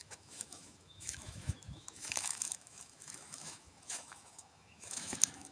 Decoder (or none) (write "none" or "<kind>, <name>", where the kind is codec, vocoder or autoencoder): autoencoder, DAC-VAE